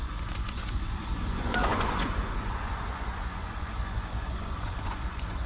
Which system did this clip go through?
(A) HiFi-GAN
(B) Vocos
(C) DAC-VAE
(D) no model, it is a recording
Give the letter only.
B